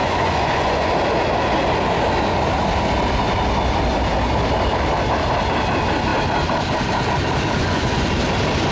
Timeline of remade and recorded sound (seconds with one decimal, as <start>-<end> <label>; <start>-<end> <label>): 0.0-0.9 remade; 0.9-7.6 recorded; 7.6-8.1 remade; 8.1-8.7 recorded